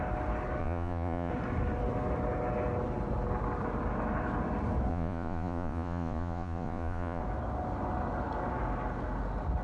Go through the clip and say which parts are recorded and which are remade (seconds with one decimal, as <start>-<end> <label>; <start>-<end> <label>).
0.0-0.6 recorded; 0.6-1.3 remade; 1.3-4.9 recorded; 4.9-7.2 remade; 7.2-9.6 recorded